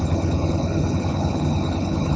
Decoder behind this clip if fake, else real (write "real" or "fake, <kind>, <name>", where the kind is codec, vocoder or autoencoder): fake, codec, HILCodec